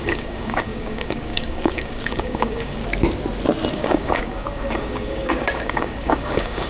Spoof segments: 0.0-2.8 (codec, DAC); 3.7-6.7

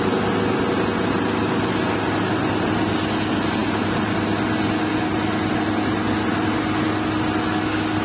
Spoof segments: none

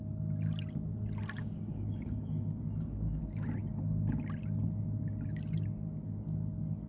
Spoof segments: 1.4-3.2 (codec, DAC)

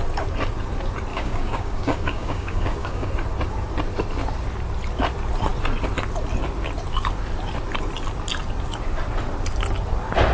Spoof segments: 1.1-3.1 (codec, DAC)

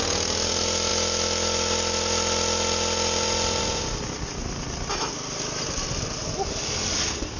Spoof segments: none

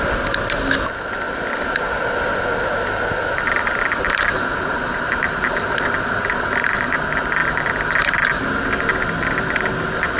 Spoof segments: none

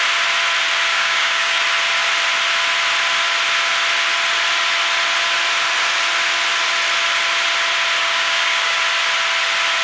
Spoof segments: 0.9-1.6 (codec, DAC); 8.0-8.8